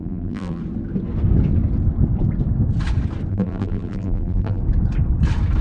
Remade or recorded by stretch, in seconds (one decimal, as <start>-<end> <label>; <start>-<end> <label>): 0.0-0.6 remade; 0.6-3.3 recorded; 3.3-4.6 remade; 4.6-5.6 recorded